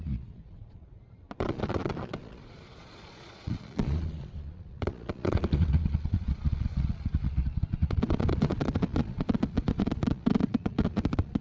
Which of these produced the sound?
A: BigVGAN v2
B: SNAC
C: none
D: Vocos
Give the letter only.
D